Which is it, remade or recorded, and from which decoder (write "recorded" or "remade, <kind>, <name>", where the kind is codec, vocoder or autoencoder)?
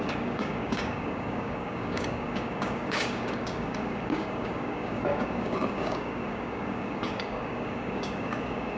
remade, codec, DAC